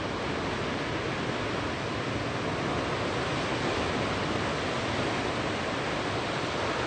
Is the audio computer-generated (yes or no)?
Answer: no